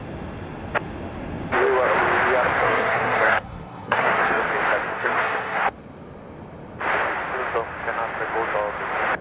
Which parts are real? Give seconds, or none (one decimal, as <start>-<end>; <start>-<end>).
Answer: 0.0-2.6; 4.4-4.9; 5.7-9.2